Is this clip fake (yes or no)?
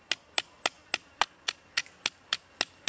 no